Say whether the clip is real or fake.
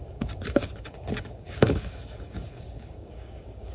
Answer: fake